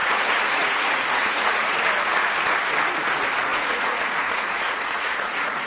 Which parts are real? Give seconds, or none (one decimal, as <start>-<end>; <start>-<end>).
1.8-3.5